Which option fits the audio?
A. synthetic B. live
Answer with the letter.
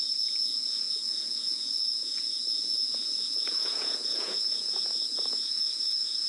A